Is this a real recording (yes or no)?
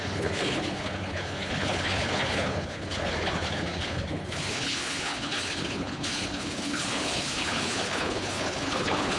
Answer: no